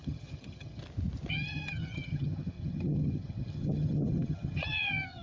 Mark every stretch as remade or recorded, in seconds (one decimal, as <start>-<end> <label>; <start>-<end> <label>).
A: 0.0-0.8 remade; 0.8-1.3 recorded; 1.3-5.2 remade